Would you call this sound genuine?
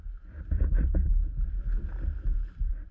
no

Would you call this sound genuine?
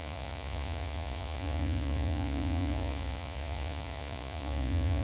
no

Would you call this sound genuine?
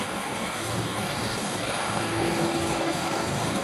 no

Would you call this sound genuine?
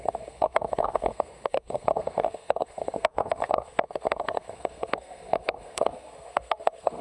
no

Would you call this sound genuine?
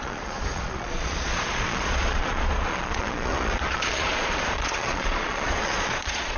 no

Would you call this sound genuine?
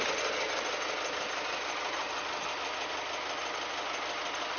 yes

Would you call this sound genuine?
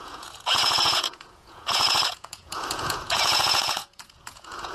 no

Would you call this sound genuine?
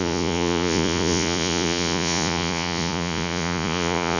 no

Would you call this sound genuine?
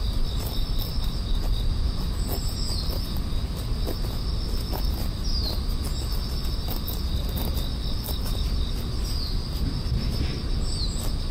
yes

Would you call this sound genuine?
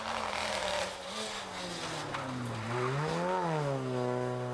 yes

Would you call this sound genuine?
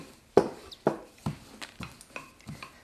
yes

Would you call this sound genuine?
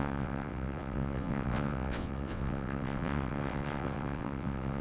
no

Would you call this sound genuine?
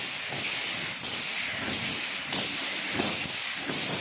yes